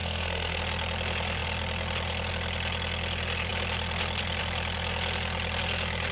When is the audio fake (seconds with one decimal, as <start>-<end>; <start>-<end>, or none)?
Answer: 0.0-0.6